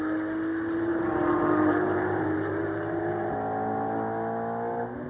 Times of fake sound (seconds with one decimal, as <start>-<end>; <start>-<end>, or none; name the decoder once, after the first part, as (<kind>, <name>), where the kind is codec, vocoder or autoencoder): 0.9-3.3 (vocoder, BigVGAN v2)